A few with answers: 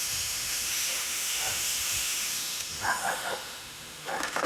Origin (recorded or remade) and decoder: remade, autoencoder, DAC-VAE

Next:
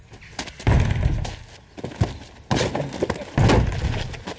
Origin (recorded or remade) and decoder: recorded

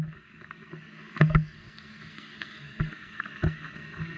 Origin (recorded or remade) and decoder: remade, codec, SNAC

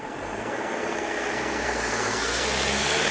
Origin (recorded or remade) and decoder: remade, codec, SNAC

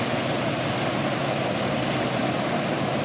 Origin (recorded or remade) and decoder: recorded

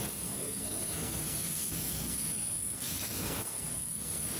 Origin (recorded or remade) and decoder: remade, codec, SNAC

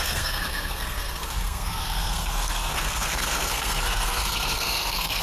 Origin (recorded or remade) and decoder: remade, codec, SNAC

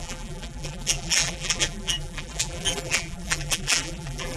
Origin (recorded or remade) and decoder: remade, vocoder, BigVGAN v2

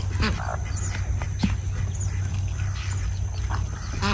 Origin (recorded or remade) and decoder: recorded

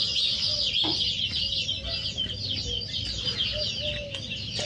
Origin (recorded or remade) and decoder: recorded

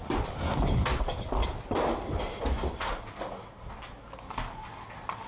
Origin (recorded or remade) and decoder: recorded